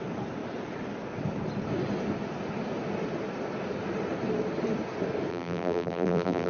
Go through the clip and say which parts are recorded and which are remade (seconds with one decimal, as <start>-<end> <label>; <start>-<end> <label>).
0.0-5.3 recorded; 5.3-6.5 remade